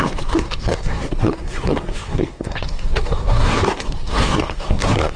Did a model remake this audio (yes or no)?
yes